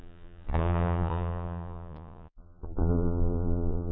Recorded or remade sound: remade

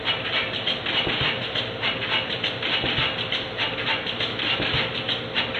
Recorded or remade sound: recorded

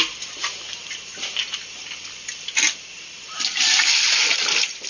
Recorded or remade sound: recorded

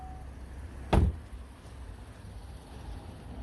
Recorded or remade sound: recorded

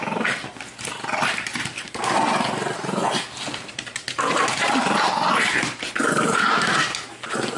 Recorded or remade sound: recorded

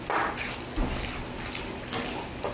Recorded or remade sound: recorded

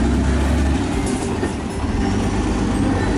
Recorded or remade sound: recorded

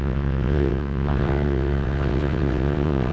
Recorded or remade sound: remade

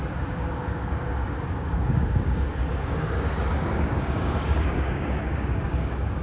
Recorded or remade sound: remade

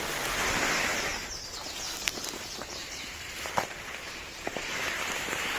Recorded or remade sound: recorded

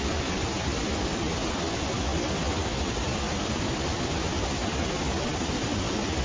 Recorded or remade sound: recorded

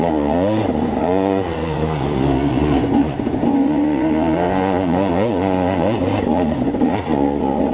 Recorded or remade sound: remade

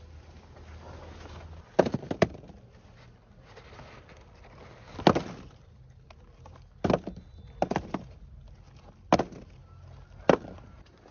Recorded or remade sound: recorded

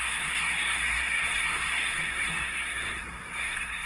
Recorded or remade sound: remade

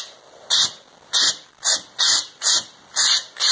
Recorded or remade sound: recorded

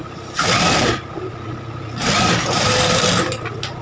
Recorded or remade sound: recorded